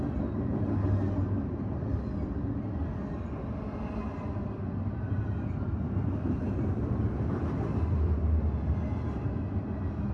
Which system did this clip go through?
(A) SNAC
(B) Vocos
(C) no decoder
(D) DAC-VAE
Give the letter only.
C